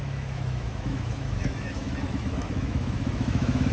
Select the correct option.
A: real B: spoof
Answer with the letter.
B